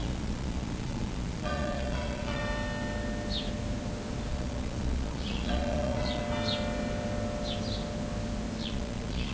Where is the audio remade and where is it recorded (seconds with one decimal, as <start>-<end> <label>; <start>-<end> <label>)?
0.0-2.4 remade; 2.4-4.3 recorded; 4.3-6.2 remade; 6.2-8.6 recorded; 8.6-9.3 remade